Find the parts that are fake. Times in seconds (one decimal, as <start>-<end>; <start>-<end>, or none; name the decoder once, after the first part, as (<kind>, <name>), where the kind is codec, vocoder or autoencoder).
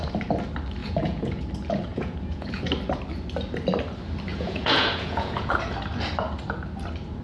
0.8-1.4 (vocoder, Vocos); 1.9-2.6; 4.3-5.5